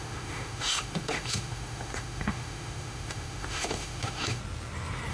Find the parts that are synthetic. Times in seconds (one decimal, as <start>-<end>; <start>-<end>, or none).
0.0-4.4